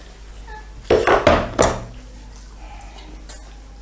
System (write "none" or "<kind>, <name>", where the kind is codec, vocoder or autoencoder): none